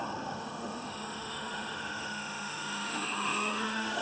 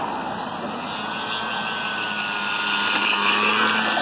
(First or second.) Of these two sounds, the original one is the second